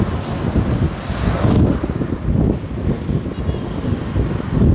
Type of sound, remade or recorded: recorded